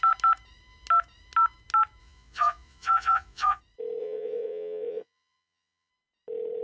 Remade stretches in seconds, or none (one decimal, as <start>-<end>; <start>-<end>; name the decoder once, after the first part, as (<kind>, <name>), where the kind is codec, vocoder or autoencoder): 2.0-3.6 (vocoder, Vocos); 4.0-5.9